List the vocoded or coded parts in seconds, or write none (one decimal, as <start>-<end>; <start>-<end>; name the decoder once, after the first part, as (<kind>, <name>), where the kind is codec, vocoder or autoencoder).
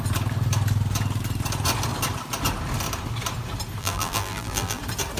3.8-4.8 (vocoder, BigVGAN v2)